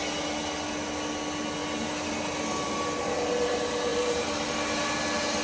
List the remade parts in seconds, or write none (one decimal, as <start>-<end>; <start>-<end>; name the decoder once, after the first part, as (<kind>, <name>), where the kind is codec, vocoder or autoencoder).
3.9-4.5 (vocoder, BigVGAN v2)